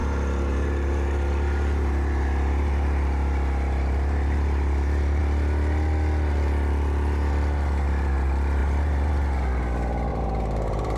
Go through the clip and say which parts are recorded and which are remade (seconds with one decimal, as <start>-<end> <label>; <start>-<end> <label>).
0.0-5.2 remade; 5.2-8.6 recorded; 8.6-9.1 remade; 9.1-10.1 recorded; 10.1-11.0 remade